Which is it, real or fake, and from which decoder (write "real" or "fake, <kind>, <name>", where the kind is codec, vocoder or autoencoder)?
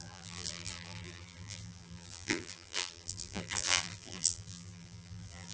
fake, vocoder, BigVGAN v2